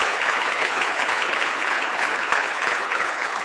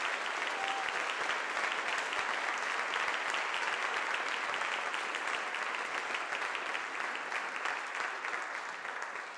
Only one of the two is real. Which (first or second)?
second